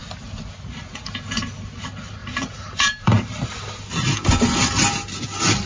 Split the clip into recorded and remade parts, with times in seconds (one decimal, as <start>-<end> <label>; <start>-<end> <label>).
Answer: 0.0-2.2 recorded; 2.2-3.8 remade; 3.8-5.7 recorded